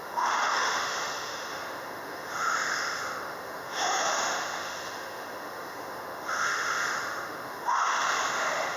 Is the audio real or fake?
fake